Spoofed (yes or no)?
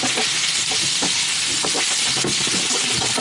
no